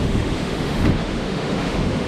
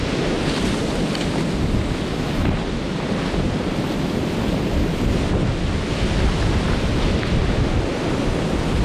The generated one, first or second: first